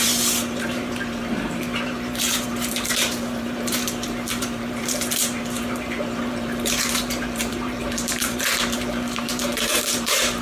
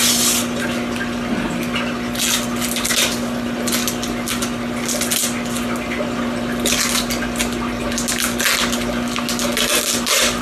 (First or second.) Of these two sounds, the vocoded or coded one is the first